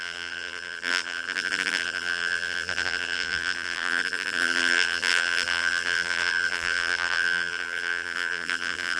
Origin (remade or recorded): remade